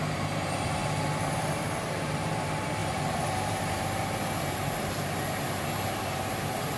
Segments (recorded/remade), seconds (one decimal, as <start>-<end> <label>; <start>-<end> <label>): 0.0-0.8 remade; 0.8-1.3 recorded; 1.3-6.8 remade